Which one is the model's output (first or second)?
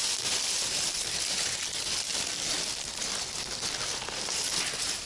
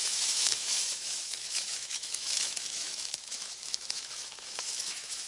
second